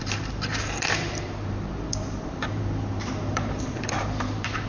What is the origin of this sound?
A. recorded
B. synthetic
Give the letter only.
B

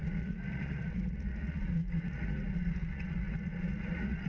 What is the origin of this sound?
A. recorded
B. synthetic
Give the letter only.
B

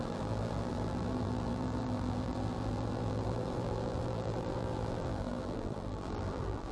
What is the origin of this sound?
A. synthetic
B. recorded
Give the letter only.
A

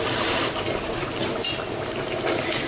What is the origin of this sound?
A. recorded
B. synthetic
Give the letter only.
A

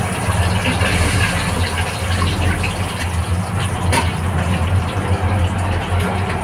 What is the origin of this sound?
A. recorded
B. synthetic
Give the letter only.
A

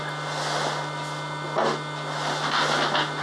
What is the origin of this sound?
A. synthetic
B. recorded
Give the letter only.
B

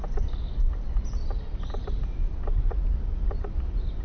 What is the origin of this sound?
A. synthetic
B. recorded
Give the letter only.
B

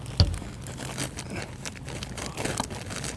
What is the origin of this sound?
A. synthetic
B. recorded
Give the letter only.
B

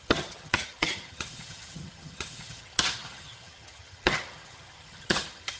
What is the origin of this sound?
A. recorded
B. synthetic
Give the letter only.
B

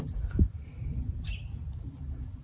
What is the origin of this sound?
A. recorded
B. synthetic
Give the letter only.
A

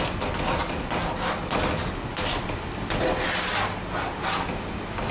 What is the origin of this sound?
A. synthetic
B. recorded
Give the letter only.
B